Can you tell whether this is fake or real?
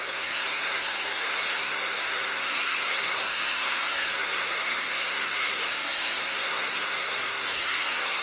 fake